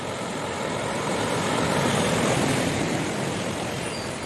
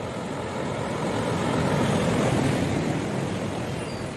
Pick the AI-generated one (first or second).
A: first